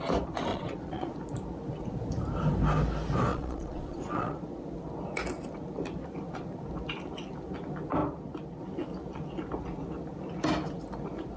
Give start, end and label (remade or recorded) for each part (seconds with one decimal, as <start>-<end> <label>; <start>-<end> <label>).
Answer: 0.0-0.5 recorded; 0.5-1.1 remade; 1.1-3.3 recorded; 3.3-4.6 remade; 4.6-11.4 recorded